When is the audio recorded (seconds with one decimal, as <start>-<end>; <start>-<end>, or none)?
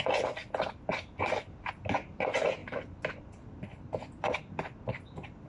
0.0-2.6; 4.4-5.5